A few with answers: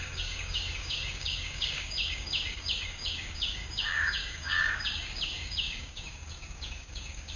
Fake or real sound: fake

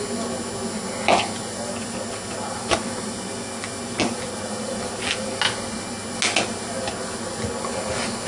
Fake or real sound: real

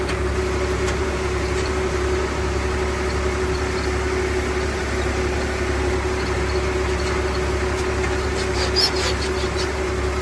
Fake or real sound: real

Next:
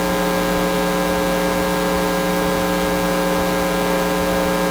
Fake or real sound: real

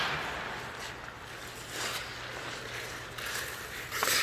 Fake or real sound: real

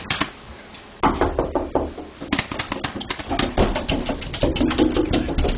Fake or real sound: real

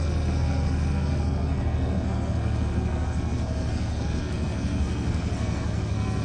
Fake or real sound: fake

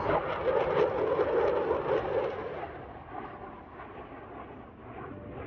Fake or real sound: real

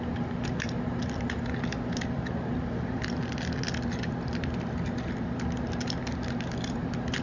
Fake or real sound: real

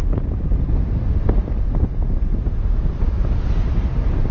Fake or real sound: real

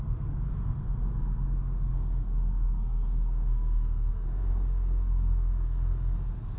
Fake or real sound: fake